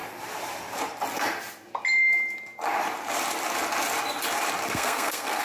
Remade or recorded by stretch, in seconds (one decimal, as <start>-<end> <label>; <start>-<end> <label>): 0.0-4.7 recorded; 4.7-5.4 remade